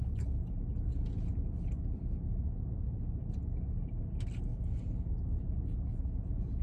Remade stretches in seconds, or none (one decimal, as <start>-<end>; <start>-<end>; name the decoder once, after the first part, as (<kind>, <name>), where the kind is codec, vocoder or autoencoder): none